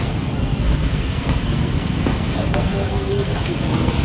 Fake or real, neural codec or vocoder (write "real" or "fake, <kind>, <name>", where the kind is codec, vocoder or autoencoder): fake, codec, SNAC